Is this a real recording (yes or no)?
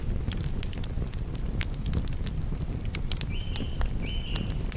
yes